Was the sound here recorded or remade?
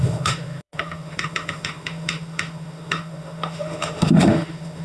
remade